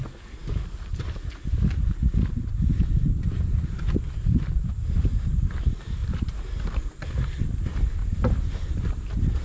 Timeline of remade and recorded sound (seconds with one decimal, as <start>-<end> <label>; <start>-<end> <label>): 0.0-2.0 recorded; 2.0-5.5 remade; 5.5-6.0 recorded; 6.0-6.8 remade; 6.8-8.0 recorded; 8.0-9.4 remade